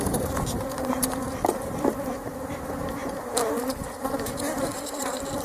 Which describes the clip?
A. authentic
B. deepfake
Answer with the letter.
B